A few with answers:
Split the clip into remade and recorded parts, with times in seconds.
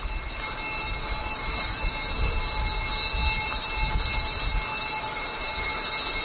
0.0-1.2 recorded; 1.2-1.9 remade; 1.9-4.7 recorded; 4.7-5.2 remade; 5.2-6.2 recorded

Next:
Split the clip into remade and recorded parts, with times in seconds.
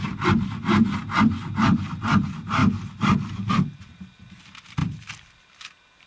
0.0-1.6 recorded; 1.6-2.2 remade; 2.2-2.6 recorded; 2.6-3.5 remade; 3.5-4.8 recorded; 4.8-5.4 remade; 5.4-6.1 recorded